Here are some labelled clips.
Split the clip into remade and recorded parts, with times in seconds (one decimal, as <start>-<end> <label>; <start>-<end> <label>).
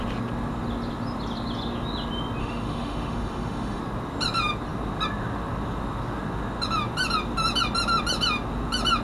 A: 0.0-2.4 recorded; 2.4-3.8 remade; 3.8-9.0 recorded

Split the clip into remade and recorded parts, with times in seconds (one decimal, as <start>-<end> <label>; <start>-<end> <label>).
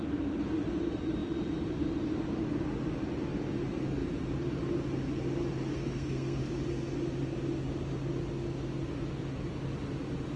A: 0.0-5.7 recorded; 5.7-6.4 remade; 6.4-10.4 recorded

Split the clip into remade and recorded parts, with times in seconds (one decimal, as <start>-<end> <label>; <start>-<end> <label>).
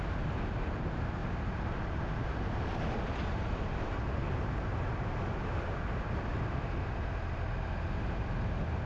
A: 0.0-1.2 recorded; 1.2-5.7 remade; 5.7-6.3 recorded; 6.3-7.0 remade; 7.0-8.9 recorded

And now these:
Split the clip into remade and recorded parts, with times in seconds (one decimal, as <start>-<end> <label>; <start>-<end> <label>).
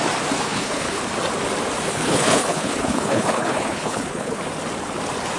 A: 0.0-0.4 recorded; 0.4-1.0 remade; 1.0-1.9 recorded; 1.9-4.4 remade; 4.4-5.4 recorded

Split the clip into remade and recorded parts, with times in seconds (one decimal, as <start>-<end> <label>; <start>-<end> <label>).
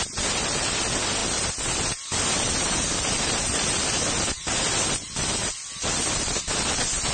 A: 0.0-7.1 recorded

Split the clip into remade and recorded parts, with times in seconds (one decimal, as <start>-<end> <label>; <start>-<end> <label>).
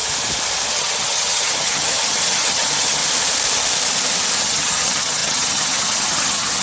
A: 0.0-0.7 recorded; 0.7-3.0 remade; 3.0-4.4 recorded; 4.4-6.6 remade